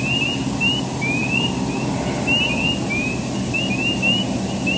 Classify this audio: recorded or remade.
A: recorded